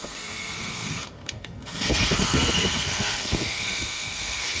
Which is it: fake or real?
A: fake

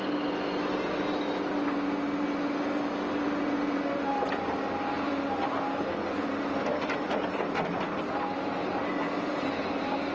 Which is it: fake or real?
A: real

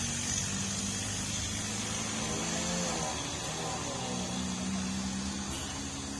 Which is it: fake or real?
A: real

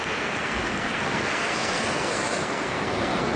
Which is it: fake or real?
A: fake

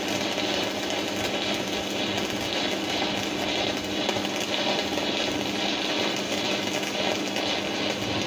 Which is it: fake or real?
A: real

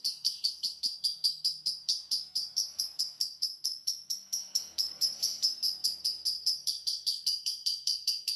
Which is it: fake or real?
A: fake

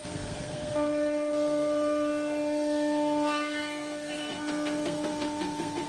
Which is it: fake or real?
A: fake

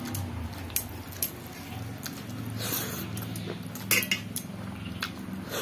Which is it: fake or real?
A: real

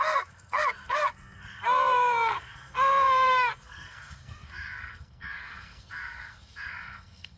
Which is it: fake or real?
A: fake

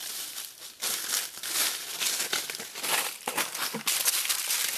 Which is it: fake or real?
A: real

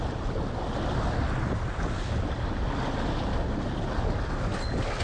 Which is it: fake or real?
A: real